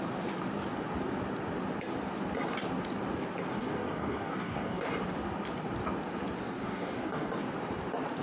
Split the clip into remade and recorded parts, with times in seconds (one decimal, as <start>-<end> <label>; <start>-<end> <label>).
0.0-3.5 recorded; 3.5-4.9 remade; 4.9-6.5 recorded; 6.5-7.3 remade; 7.3-8.2 recorded